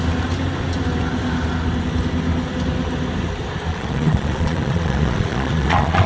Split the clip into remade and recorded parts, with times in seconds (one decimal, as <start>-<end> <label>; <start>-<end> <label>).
0.0-3.7 recorded; 3.7-6.1 remade